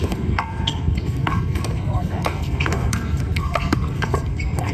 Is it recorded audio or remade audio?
remade